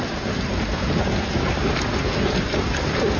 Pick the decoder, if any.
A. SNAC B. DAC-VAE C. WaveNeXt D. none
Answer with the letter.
D